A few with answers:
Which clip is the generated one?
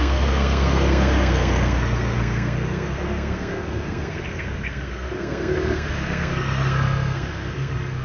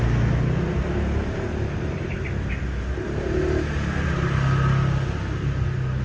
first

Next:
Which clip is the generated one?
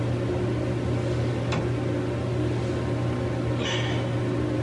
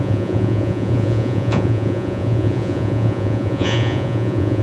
second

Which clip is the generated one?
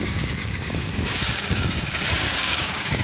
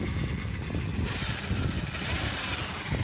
first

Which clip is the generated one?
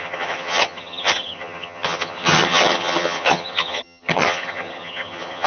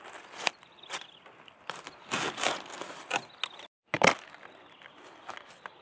first